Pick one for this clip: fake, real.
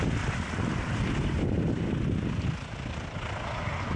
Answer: fake